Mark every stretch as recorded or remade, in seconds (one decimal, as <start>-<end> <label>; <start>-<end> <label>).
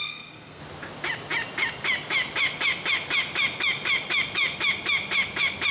0.0-0.6 remade; 0.6-5.7 recorded